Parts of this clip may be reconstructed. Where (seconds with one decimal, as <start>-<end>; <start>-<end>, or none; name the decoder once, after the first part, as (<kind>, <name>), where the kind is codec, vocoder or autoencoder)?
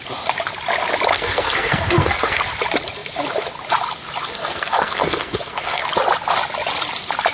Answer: 1.1-2.4 (codec, SNAC); 4.3-5.8